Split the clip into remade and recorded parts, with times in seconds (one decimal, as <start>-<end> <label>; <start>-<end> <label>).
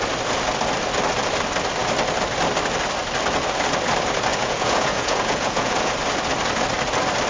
0.0-4.3 recorded; 4.3-5.9 remade; 5.9-7.3 recorded